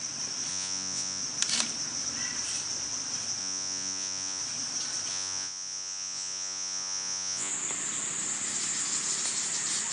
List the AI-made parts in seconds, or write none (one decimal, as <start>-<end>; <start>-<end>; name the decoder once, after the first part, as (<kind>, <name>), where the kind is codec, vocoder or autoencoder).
0.5-1.2 (vocoder, Vocos); 3.4-4.4; 5.1-7.5